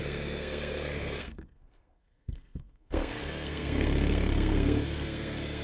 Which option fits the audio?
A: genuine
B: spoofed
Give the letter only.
B